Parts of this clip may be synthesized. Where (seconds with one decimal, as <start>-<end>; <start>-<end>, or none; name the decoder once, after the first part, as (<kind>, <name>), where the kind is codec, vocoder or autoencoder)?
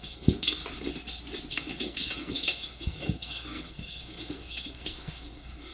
0.0-0.6 (codec, SNAC); 1.5-5.7